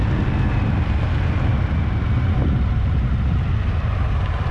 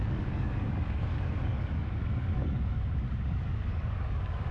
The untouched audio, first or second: first